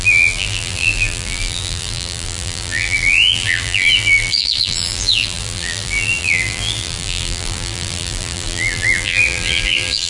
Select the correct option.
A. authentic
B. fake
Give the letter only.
B